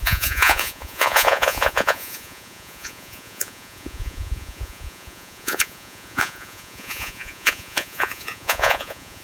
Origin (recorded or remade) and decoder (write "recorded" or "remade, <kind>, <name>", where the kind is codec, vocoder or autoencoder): remade, vocoder, Vocos